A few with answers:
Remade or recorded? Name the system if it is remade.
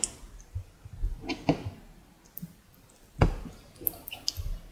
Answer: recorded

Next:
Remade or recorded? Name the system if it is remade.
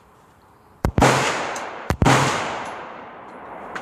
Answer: remade, vocoder, BigVGAN v2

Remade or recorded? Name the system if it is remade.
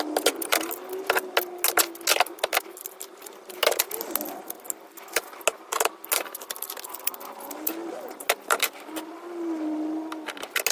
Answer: recorded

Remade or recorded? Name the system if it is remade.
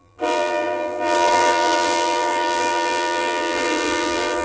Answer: remade, vocoder, BigVGAN v2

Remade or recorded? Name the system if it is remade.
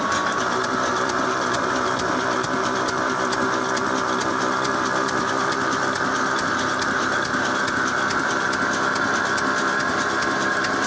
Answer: remade, vocoder, BigVGAN v2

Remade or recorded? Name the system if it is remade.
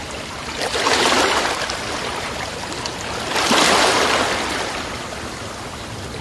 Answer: remade, vocoder, BigVGAN v2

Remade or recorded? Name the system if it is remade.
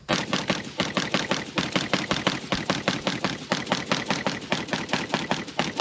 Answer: remade, vocoder, BigVGAN v2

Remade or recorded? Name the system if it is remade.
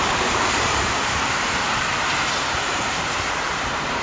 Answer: remade, vocoder, BigVGAN v2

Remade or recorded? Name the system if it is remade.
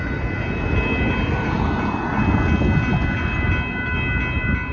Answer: recorded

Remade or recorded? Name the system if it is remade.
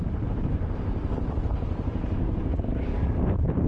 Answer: remade, vocoder, BigVGAN v2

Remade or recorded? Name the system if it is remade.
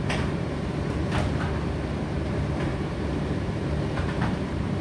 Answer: remade, vocoder, BigVGAN v2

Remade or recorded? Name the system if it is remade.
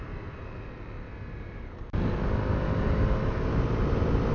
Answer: recorded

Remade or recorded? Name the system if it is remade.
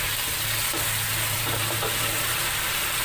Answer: remade, vocoder, BigVGAN v2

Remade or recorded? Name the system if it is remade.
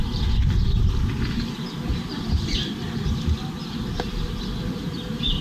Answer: remade, vocoder, BigVGAN v2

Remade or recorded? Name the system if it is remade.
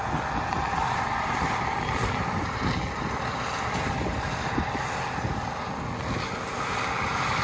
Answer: remade, vocoder, BigVGAN v2